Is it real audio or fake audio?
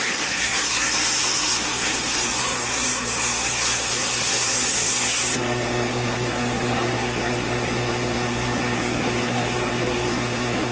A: fake